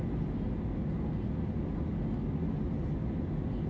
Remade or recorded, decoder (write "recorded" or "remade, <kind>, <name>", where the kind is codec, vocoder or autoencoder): recorded